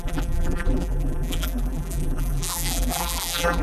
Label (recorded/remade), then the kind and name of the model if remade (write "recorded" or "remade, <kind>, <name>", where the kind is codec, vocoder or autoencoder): remade, vocoder, BigVGAN v2